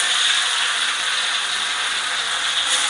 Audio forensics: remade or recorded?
recorded